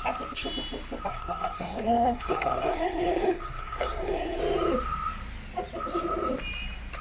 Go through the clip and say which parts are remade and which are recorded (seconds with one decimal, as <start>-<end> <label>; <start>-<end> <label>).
0.0-1.1 recorded; 1.1-4.4 remade; 4.4-7.0 recorded